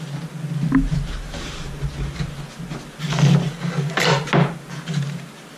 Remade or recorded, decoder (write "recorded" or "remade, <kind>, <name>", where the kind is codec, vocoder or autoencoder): recorded